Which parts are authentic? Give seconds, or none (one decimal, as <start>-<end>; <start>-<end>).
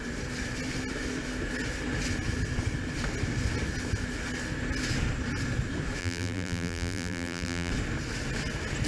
0.0-6.0; 7.7-8.9